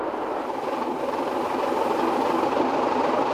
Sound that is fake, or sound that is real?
real